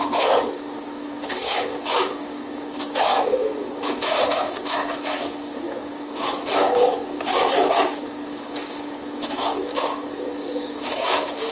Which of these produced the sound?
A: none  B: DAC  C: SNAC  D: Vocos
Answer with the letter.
B